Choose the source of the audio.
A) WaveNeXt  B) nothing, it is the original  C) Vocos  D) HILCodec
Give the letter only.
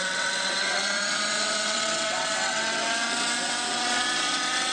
A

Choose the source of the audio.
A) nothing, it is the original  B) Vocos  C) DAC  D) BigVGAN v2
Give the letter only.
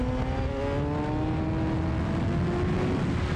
A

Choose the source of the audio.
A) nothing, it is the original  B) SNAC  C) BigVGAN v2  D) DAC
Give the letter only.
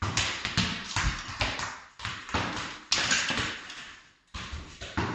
A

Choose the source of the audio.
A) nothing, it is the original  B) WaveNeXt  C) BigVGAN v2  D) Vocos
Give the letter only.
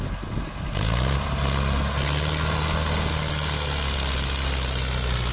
A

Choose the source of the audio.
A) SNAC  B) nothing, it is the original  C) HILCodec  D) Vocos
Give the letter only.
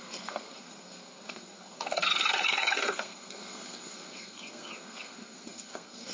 A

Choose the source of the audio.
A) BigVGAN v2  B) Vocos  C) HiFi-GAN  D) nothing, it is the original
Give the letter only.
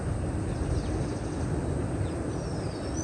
D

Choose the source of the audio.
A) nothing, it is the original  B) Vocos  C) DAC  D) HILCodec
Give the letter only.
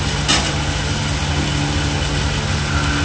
A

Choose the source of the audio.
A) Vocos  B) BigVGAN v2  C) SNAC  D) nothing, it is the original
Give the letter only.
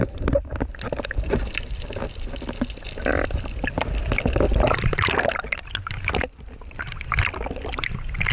B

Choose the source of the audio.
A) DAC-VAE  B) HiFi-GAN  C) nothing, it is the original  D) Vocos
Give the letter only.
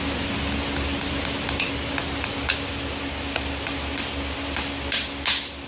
C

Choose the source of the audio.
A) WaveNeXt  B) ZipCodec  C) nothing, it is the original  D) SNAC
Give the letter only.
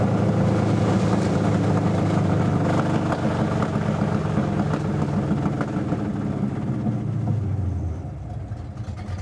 C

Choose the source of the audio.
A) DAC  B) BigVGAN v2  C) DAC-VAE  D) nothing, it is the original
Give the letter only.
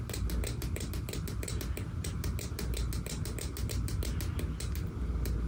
D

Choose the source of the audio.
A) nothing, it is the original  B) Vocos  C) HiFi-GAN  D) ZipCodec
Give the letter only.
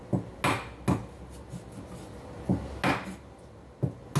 A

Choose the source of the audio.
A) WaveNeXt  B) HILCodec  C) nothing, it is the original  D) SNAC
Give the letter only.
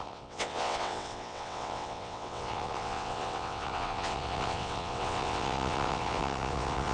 A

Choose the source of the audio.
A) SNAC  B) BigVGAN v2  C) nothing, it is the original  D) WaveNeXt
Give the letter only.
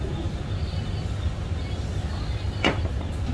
C